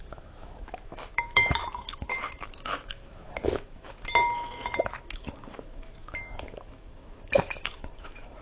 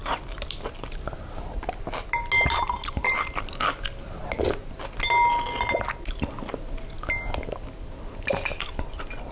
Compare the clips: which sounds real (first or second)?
second